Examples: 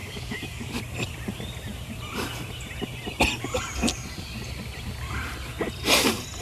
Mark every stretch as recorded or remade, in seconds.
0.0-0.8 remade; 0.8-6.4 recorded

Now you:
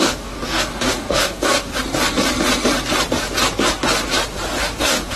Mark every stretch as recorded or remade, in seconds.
0.0-1.7 remade; 1.7-4.8 recorded; 4.8-5.2 remade

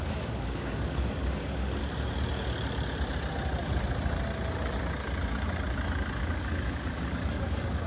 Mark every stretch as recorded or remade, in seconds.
0.0-1.8 remade; 1.8-6.2 recorded; 6.2-7.9 remade

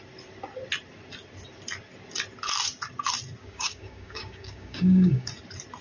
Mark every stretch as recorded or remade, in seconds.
0.0-3.4 recorded; 3.4-5.3 remade; 5.3-5.8 recorded

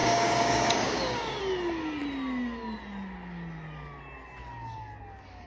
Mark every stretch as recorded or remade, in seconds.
0.0-1.4 remade; 1.4-5.5 recorded

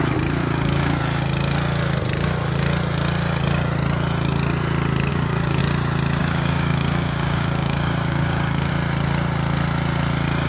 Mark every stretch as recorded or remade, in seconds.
0.0-0.4 recorded; 0.4-1.0 remade; 1.0-5.1 recorded; 5.1-5.6 remade; 5.6-6.2 recorded; 6.2-8.7 remade; 8.7-10.5 recorded

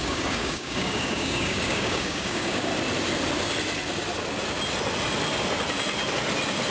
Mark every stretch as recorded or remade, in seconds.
0.0-2.7 remade; 2.7-6.7 recorded